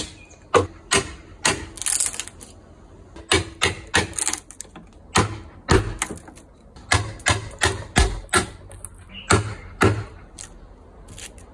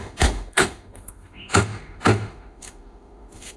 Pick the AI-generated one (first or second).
second